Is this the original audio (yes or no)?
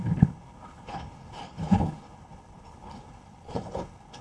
no